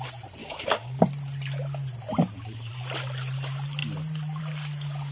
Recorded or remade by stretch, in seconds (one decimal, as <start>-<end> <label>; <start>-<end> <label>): 0.0-0.4 recorded; 0.4-1.0 remade; 1.0-5.1 recorded